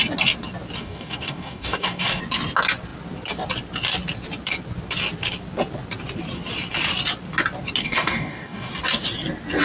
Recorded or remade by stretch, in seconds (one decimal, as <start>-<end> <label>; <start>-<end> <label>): 0.0-0.8 recorded; 0.8-2.2 remade; 2.2-7.8 recorded; 7.8-8.7 remade; 8.7-9.6 recorded